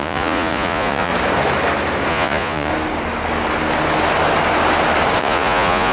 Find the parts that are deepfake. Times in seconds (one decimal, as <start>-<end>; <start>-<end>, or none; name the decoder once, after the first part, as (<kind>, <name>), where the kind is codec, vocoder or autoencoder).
0.0-1.1 (vocoder, Vocos); 2.1-2.7; 5.2-5.9